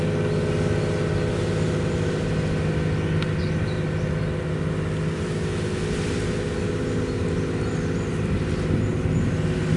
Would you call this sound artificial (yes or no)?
no